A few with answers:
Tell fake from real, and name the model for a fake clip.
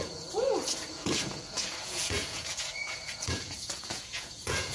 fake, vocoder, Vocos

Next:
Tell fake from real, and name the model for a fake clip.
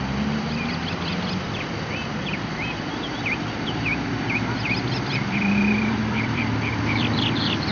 fake, vocoder, BigVGAN v2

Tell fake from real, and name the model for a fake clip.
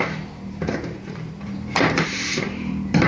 fake, vocoder, BigVGAN v2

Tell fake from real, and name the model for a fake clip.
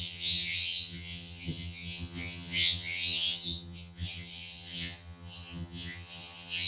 fake, vocoder, HiFi-GAN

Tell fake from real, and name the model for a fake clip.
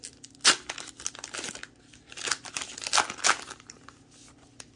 real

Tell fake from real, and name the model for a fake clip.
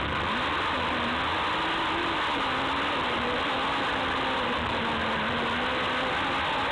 real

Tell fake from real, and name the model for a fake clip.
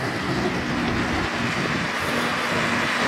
real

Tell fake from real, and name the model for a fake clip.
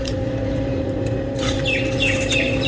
fake, vocoder, BigVGAN v2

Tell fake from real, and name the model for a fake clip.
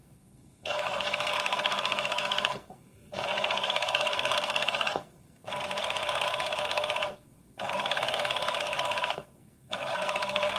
fake, codec, SNAC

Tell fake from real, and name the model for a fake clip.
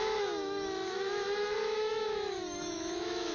fake, autoencoder, DAC-VAE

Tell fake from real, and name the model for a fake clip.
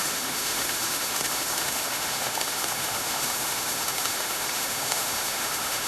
fake, autoencoder, DAC-VAE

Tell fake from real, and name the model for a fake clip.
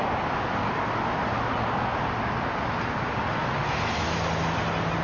real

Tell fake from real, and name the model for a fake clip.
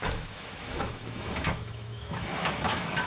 fake, autoencoder, DAC-VAE